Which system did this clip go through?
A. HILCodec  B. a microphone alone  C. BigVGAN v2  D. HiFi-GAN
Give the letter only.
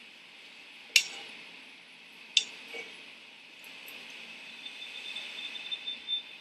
B